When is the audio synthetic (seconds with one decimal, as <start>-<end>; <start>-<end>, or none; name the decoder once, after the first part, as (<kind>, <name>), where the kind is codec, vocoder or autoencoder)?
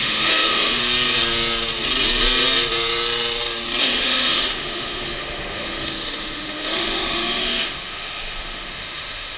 0.0-0.8 (autoencoder, DAC-VAE); 3.8-9.4